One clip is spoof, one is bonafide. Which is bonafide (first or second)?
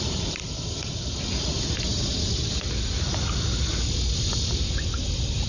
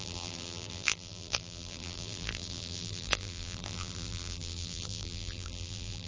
first